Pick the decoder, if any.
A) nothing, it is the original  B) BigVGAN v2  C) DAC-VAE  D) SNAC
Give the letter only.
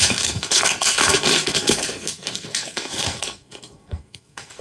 D